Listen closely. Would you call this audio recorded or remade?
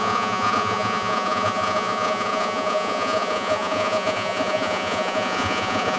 remade